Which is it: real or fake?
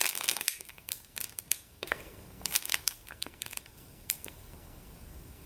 fake